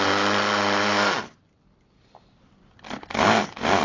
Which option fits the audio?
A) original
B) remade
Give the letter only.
A